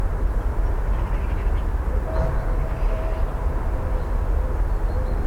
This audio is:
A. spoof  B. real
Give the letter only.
B